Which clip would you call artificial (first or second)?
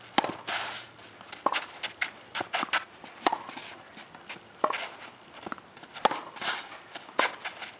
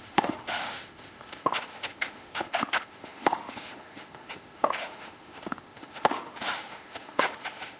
second